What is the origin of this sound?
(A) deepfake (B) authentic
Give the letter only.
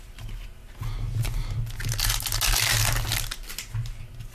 B